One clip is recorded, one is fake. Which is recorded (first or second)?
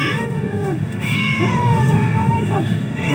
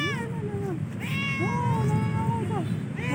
second